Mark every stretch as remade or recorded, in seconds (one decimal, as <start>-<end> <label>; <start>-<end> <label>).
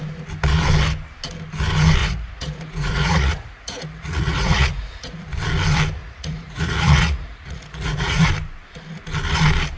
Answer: 0.0-2.0 recorded; 2.0-5.2 remade; 5.2-6.0 recorded; 6.0-8.3 remade; 8.3-9.8 recorded